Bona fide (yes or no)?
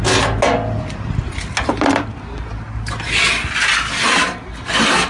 yes